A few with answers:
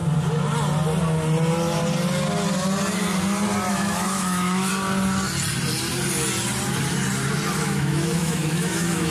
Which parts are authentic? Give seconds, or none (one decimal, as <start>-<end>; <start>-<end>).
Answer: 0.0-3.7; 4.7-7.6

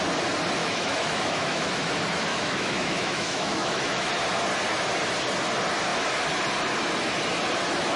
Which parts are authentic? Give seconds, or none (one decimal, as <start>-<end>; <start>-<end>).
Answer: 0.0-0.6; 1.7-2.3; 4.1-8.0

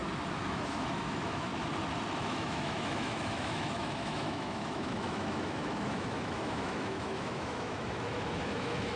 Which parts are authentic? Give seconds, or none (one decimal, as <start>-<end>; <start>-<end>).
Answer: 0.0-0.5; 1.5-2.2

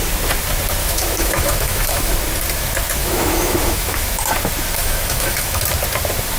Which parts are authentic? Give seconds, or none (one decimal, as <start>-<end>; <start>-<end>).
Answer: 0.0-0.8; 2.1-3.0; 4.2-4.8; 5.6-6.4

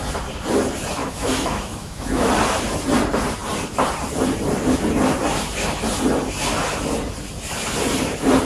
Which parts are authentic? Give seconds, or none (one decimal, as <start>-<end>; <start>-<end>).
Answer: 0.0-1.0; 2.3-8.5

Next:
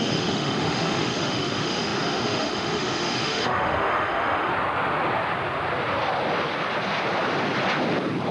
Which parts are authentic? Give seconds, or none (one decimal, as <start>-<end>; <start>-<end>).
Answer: 4.5-8.3

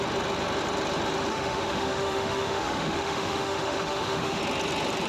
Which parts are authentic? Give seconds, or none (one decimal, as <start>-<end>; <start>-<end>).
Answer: 0.0-1.3; 4.4-5.1

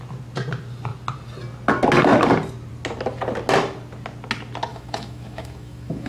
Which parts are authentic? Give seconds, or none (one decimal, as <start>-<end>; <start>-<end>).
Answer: 0.0-4.7